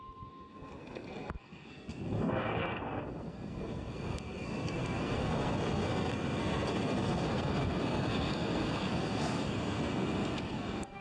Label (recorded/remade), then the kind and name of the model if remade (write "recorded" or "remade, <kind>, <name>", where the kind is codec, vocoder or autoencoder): remade, codec, SNAC